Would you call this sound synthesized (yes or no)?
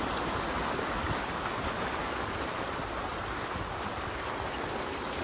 no